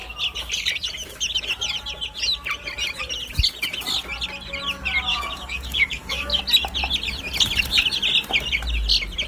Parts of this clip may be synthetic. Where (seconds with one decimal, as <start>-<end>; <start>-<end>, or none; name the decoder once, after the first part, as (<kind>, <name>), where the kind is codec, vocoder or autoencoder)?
5.1-6.4 (codec, DAC)